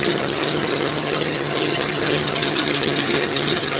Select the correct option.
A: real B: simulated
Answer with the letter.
B